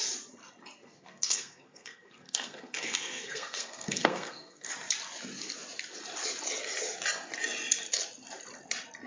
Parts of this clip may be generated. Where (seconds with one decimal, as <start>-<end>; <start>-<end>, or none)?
0.8-4.7